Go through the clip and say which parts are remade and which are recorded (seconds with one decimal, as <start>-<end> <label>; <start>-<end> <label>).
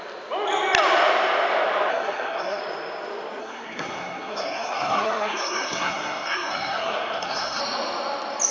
0.0-1.9 recorded; 1.9-2.6 remade; 2.6-3.4 recorded; 3.4-7.6 remade; 7.6-8.5 recorded